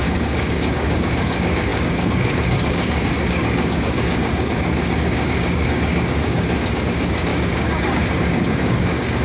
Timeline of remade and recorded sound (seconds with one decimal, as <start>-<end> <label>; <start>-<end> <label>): 0.0-9.2 remade